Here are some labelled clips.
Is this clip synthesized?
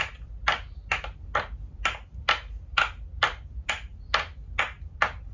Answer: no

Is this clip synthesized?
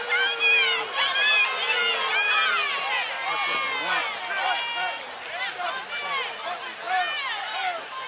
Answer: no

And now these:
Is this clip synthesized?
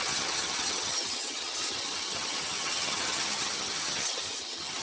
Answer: yes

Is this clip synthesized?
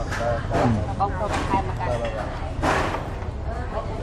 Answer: no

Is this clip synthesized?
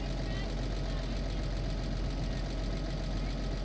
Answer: no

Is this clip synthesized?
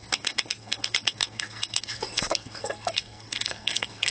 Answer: yes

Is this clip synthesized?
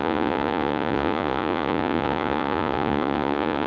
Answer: yes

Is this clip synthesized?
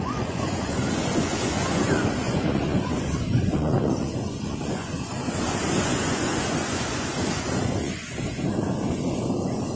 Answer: yes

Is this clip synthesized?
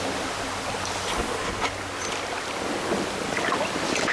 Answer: no